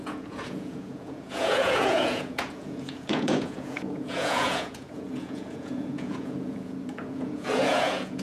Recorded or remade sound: remade